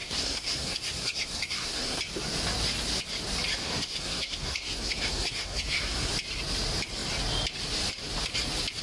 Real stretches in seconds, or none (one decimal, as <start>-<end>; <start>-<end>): 2.0-3.6; 6.1-8.8